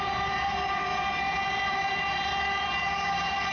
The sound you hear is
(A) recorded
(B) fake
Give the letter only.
B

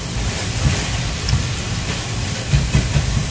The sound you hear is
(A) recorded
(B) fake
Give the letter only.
B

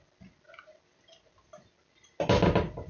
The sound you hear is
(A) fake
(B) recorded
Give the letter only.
B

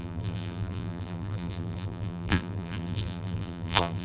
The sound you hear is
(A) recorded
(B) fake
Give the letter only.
B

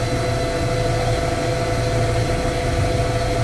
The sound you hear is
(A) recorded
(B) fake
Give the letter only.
A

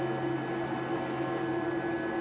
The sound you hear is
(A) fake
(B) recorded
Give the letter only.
B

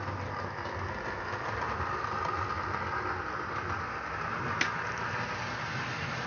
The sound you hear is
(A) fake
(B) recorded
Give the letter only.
B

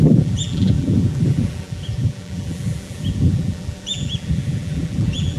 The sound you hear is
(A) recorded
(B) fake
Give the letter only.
B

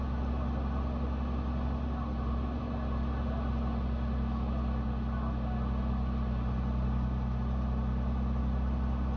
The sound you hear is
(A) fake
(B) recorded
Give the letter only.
B